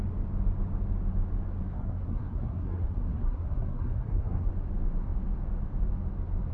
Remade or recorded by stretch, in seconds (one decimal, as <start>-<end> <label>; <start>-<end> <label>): 0.0-1.7 recorded; 1.7-4.5 remade; 4.5-6.5 recorded